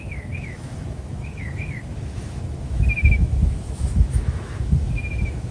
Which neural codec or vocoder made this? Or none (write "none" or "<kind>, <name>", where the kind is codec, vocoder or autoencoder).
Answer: autoencoder, DAC-VAE